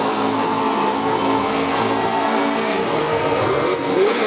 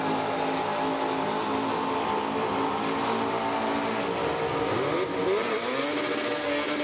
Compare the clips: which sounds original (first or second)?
second